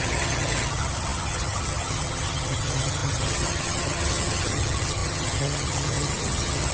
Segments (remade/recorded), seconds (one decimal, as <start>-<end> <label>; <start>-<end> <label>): 0.0-6.7 remade